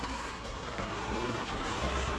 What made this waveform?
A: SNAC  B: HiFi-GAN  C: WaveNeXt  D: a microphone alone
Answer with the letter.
A